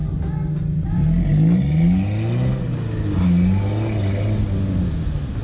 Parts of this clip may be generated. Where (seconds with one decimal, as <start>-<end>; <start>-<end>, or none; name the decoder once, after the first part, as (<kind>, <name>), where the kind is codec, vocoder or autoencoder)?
none